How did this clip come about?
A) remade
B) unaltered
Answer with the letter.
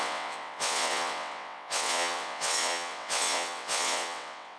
A